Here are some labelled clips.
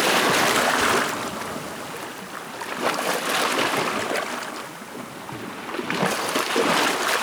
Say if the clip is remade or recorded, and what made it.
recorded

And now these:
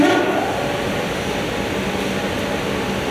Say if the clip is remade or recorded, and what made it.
recorded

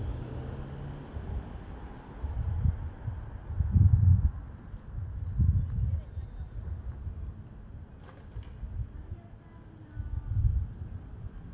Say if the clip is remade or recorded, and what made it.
recorded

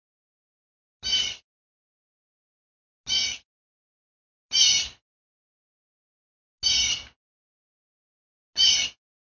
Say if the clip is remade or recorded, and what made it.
recorded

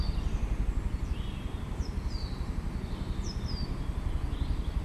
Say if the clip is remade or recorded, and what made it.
recorded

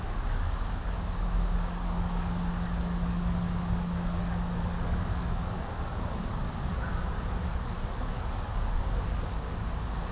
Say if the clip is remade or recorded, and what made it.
remade, codec, DAC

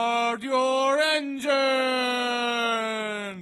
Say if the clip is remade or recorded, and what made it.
recorded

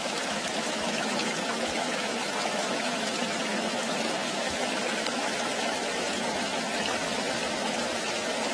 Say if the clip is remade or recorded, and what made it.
remade, autoencoder, DAC-VAE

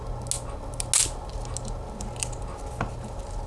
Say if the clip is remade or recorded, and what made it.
recorded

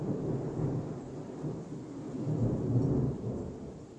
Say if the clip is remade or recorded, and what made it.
recorded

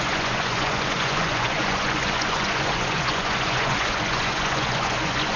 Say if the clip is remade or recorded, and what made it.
remade, vocoder, Vocos